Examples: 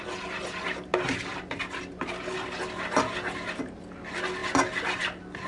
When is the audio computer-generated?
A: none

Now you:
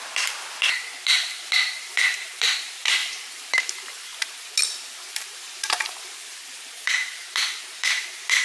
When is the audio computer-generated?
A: 0.0-4.1 (vocoder, BigVGAN v2); 5.1-8.4

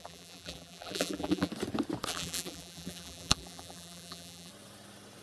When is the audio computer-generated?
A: 0.0-1.5 (vocoder, BigVGAN v2); 2.1-4.5

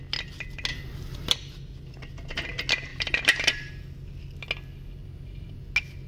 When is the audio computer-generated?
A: 0.7-1.3 (vocoder, BigVGAN v2); 2.9-3.7; 5.0-5.6

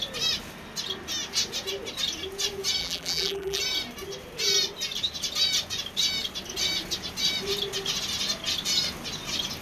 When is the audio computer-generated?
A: 2.8-3.6 (vocoder, BigVGAN v2)

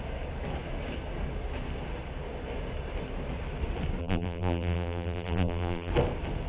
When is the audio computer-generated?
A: 4.0-5.9 (vocoder, BigVGAN v2)

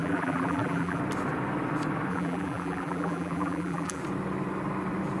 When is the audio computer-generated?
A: 0.0-1.0 (vocoder, BigVGAN v2); 2.1-4.0